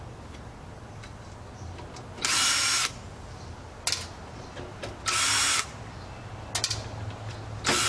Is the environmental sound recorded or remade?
recorded